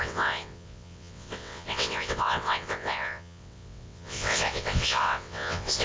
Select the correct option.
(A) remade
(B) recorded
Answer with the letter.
A